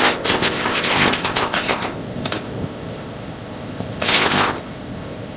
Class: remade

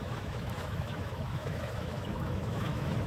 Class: remade